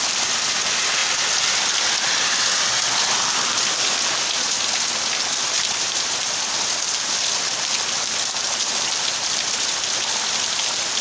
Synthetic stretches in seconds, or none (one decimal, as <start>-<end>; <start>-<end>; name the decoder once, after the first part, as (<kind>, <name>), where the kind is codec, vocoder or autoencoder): none